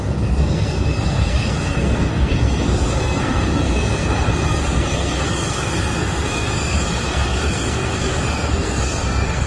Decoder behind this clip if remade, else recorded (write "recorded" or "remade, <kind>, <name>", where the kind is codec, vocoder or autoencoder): remade, codec, SNAC